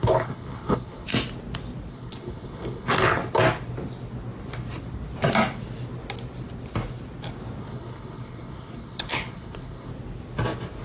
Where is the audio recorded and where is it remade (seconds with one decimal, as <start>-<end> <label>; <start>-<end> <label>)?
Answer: 0.0-1.1 remade; 1.1-1.9 recorded; 1.9-3.2 remade; 3.2-7.6 recorded; 7.6-9.9 remade; 9.9-10.8 recorded